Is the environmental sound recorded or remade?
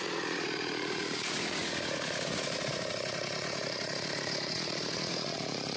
remade